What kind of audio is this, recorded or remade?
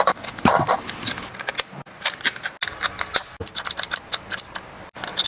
recorded